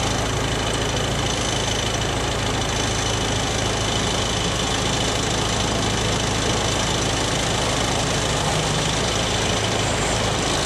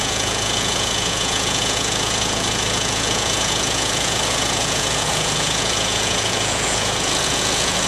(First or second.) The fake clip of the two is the second